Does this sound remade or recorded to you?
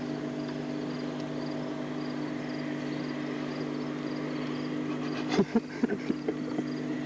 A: recorded